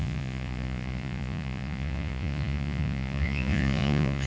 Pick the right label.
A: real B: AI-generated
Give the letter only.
B